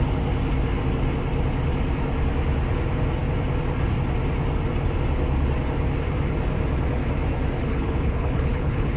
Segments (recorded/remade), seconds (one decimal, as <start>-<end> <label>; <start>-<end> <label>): 0.0-7.6 recorded; 7.6-9.0 remade